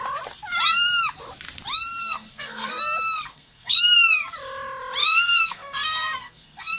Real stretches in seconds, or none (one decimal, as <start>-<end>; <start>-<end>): 0.0-2.0; 2.8-3.3; 3.8-5.0